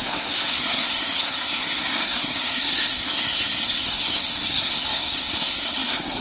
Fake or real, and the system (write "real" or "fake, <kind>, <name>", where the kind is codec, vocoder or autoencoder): fake, codec, SNAC